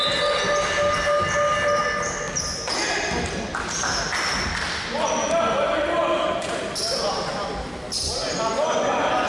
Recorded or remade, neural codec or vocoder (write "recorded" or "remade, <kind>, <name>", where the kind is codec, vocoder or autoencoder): recorded